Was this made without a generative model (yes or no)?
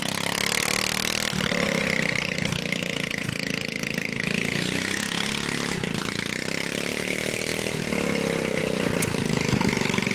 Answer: yes